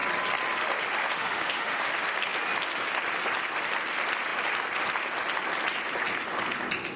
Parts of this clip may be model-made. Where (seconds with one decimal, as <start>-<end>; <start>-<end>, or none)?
1.0-1.9